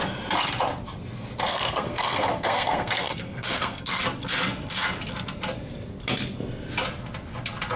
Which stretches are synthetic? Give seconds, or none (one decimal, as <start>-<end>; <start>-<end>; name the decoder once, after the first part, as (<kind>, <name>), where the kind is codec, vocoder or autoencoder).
1.5-4.0 (codec, SNAC)